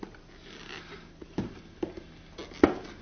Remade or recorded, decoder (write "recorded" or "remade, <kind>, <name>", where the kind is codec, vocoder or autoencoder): recorded